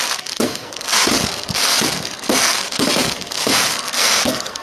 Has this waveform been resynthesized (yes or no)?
yes